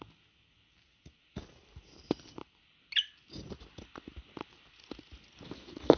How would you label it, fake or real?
real